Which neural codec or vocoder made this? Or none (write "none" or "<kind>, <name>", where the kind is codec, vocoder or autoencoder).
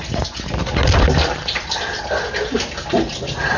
none